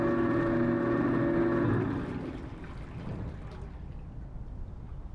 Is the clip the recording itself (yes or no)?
yes